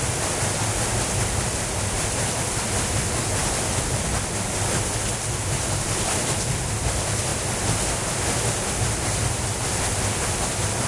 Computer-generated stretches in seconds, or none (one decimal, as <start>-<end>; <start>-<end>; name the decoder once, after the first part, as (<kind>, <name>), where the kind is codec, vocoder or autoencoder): 0.0-7.3 (vocoder, BigVGAN v2); 8.8-10.9